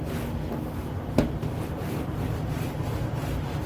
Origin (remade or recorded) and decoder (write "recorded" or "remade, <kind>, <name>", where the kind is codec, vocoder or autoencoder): recorded